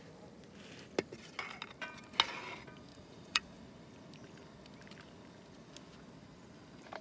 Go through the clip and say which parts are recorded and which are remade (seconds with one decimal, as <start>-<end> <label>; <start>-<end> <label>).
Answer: 0.0-2.9 recorded; 2.9-3.6 remade; 3.6-7.0 recorded